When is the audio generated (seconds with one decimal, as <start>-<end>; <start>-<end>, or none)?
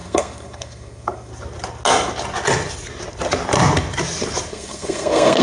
0.0-1.3; 4.5-5.4